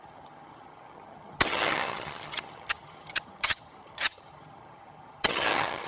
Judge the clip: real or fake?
fake